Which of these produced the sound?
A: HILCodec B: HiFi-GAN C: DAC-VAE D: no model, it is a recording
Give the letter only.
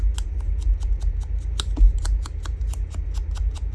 D